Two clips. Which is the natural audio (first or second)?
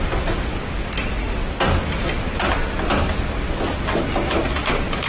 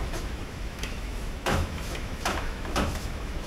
first